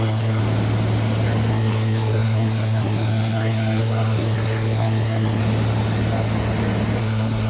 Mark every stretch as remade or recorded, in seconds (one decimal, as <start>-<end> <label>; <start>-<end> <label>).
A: 0.0-0.4 remade; 0.4-1.5 recorded; 1.5-5.4 remade; 5.4-7.0 recorded; 7.0-7.5 remade